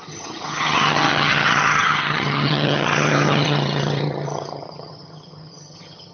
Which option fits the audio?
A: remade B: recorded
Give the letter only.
A